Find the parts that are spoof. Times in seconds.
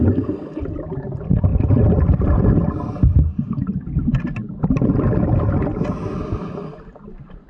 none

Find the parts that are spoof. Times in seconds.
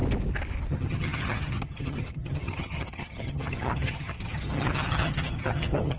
0.7-6.0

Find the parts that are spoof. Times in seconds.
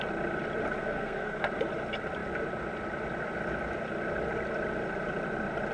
0.8-1.4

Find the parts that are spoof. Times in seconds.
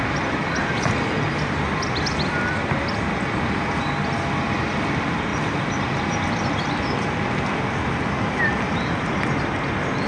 none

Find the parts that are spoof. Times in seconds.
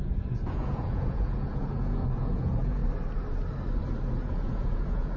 0.0-2.8; 4.1-5.2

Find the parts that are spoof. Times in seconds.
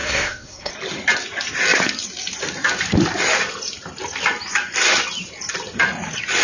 0.0-0.7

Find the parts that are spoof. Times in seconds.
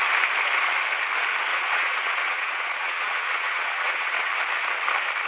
1.5-4.3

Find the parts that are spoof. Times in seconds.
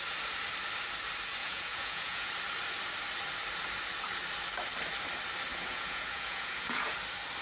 1.4-2.3; 5.5-6.9